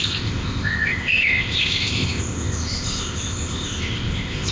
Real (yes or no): no